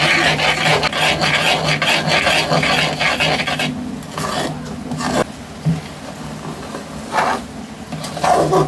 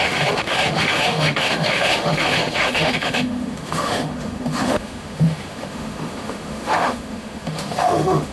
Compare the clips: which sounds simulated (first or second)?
second